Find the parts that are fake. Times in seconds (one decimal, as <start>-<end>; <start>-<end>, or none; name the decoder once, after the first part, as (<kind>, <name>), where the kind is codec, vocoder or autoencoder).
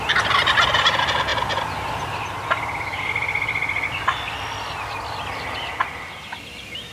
none